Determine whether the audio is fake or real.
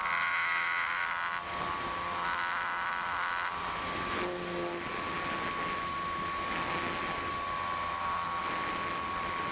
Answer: real